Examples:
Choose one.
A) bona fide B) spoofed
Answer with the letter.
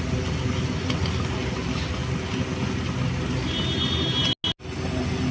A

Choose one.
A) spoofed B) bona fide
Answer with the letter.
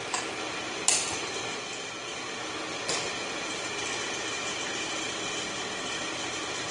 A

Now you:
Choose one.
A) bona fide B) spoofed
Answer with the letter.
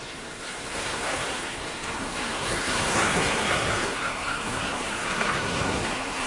B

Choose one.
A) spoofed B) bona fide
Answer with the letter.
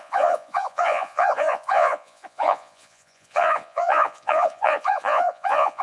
A